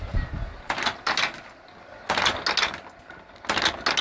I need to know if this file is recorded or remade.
recorded